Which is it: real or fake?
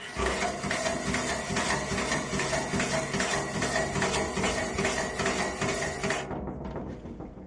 real